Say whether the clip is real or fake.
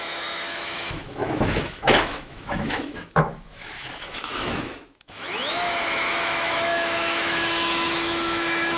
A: fake